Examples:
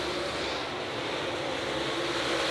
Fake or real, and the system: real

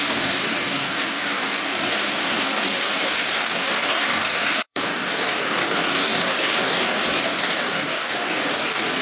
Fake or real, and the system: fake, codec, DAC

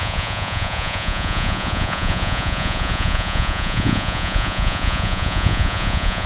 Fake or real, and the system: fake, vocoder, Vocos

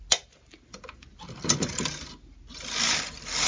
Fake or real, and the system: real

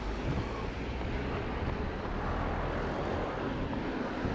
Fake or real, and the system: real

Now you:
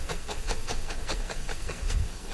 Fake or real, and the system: fake, codec, SNAC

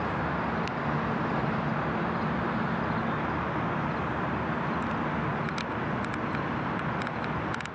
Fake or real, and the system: real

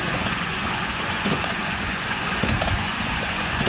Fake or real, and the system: fake, vocoder, Vocos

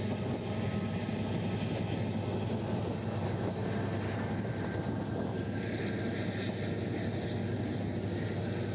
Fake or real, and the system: real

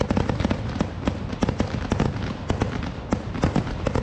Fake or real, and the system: real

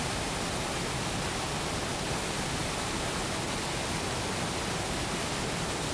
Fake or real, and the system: real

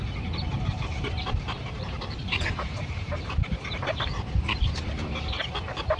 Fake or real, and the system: fake, vocoder, BigVGAN v2